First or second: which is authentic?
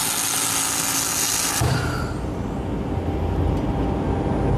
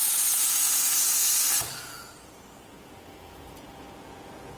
first